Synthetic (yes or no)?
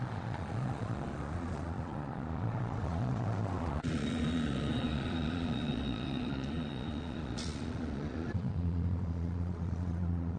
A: yes